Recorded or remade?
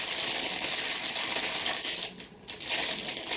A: recorded